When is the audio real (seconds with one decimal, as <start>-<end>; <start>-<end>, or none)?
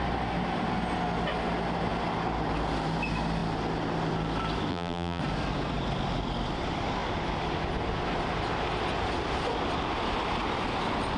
0.0-4.7; 5.2-11.2